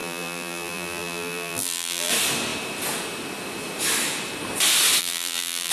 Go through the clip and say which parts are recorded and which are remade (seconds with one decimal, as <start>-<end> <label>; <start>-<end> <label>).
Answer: 0.0-2.1 remade; 2.1-5.0 recorded; 5.0-5.7 remade